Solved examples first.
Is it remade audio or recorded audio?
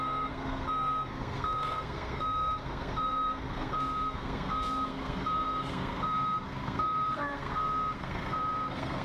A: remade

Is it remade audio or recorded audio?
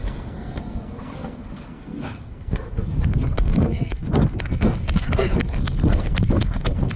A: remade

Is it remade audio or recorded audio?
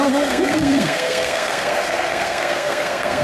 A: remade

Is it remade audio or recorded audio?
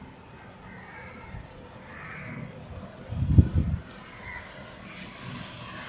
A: recorded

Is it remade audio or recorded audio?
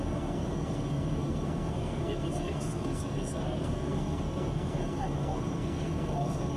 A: remade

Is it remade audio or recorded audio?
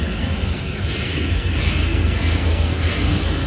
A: remade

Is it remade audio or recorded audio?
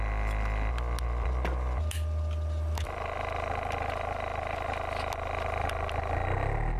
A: recorded